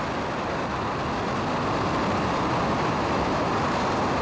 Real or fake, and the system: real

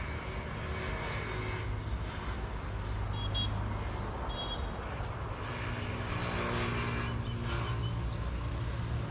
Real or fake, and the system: real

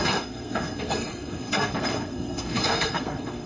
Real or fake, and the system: fake, codec, SNAC